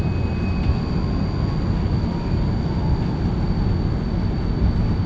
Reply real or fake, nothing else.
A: real